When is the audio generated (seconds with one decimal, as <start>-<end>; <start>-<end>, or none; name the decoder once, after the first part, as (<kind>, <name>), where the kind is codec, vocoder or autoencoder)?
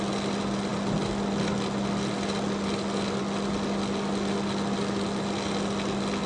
none